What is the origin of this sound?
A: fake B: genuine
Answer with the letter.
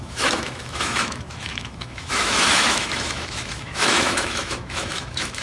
A